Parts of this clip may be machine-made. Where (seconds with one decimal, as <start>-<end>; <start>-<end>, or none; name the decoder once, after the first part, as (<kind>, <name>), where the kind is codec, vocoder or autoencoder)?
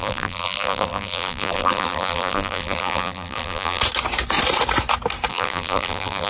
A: 0.0-3.8 (vocoder, BigVGAN v2); 5.3-6.3